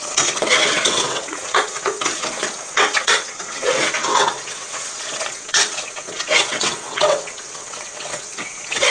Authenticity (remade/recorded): remade